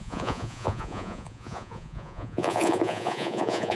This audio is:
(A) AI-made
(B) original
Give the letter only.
A